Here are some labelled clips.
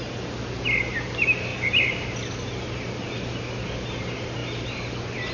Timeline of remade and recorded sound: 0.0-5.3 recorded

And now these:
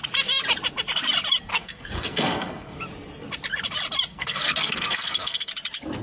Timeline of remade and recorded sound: 0.0-1.5 recorded; 1.5-2.8 remade; 2.8-4.1 recorded; 4.1-5.5 remade; 5.5-6.0 recorded